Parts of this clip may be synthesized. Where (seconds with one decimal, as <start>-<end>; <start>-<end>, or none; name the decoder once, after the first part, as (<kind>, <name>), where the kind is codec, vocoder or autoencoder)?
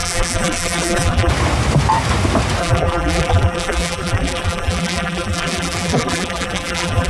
0.0-1.3 (vocoder, BigVGAN v2); 2.6-7.1